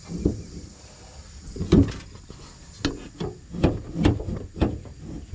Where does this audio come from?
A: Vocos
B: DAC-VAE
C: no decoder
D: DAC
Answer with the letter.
C